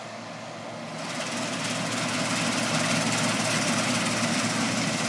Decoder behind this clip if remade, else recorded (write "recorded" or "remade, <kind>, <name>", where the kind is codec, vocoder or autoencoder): recorded